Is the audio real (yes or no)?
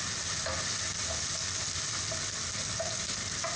yes